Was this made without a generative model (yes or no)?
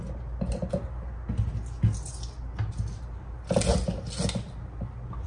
yes